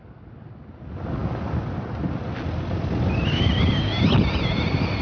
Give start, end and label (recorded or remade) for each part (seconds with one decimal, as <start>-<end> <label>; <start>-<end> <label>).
0.0-5.0 recorded